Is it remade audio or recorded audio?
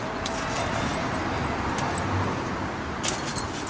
recorded